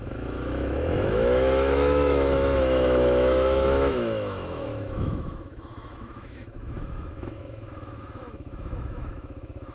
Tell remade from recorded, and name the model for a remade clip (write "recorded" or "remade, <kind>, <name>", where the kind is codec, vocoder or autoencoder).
remade, autoencoder, DAC-VAE